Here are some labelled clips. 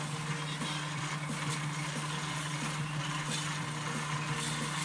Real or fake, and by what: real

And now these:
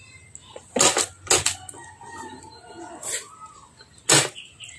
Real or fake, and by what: real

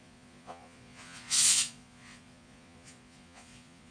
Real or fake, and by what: fake, vocoder, Vocos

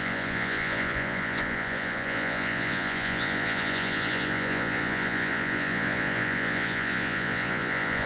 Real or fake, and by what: fake, vocoder, Vocos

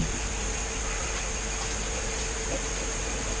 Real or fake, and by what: real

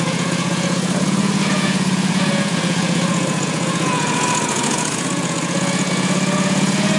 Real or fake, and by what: fake, vocoder, Vocos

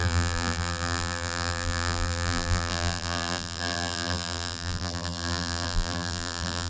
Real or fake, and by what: fake, vocoder, BigVGAN v2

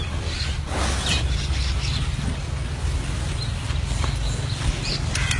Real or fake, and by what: real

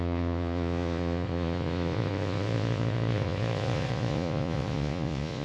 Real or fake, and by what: fake, vocoder, Vocos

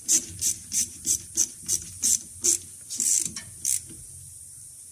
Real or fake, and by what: fake, vocoder, BigVGAN v2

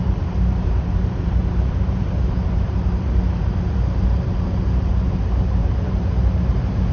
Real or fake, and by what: fake, vocoder, BigVGAN v2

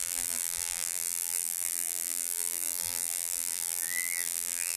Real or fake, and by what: fake, vocoder, BigVGAN v2